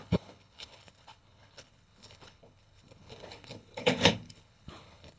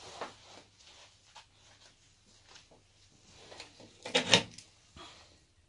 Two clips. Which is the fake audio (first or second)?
first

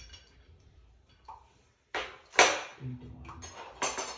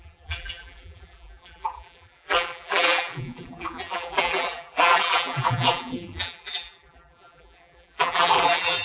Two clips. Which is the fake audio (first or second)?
second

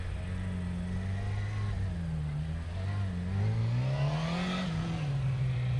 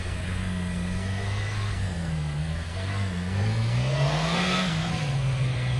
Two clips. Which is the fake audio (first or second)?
second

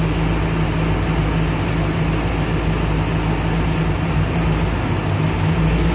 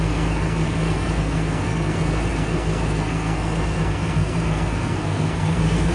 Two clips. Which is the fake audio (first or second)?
second